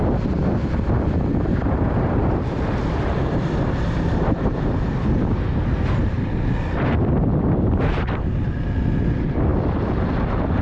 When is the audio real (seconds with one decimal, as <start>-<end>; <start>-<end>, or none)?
none